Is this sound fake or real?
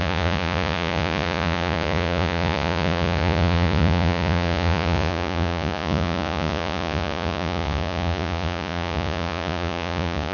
fake